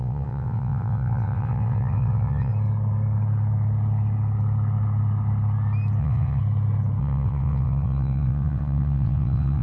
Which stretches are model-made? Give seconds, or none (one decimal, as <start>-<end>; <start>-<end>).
0.0-2.5; 6.0-6.4; 7.0-9.6